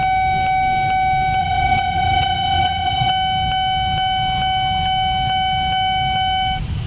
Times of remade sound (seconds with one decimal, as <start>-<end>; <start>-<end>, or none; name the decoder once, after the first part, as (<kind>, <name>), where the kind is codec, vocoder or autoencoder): 1.4-3.1 (vocoder, WaveNeXt)